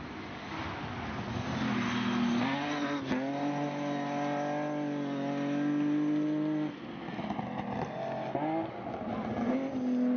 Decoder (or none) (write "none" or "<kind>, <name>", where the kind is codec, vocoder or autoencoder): none